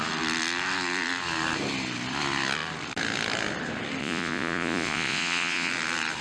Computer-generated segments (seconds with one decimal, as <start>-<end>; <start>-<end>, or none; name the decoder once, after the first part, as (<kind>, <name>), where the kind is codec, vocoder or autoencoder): 4.0-5.7 (vocoder, Vocos)